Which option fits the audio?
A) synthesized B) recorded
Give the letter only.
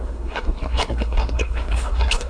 A